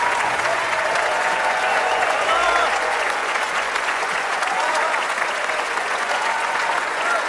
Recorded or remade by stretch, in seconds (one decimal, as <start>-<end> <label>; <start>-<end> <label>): 0.0-7.3 remade